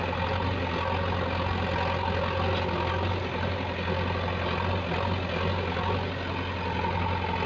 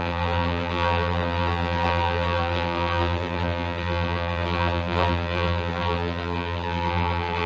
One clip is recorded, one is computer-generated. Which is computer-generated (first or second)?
second